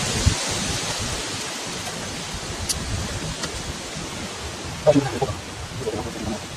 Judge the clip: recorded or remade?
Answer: recorded